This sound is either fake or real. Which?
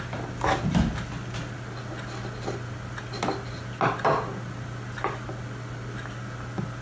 real